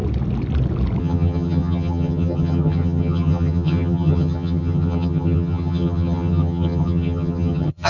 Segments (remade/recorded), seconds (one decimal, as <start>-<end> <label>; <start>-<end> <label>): 0.0-1.0 recorded; 1.0-7.9 remade